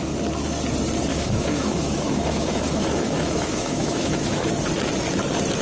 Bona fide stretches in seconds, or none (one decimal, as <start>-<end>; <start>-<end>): 0.0-1.1; 4.5-5.6